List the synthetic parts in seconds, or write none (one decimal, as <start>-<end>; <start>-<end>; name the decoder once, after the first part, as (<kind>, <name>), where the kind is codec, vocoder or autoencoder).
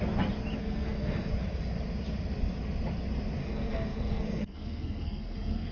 0.6-1.3 (codec, SNAC); 3.4-5.7